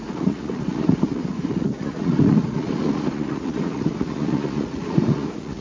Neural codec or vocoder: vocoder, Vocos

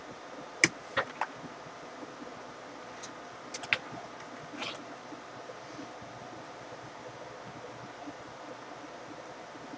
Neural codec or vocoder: none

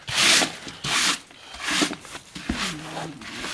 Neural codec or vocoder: none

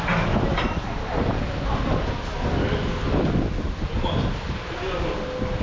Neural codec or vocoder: none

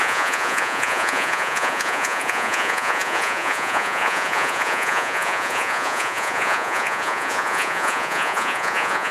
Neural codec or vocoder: vocoder, Vocos